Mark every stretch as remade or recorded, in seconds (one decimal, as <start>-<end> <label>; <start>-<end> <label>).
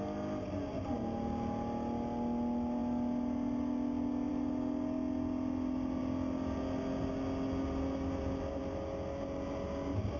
0.0-10.2 recorded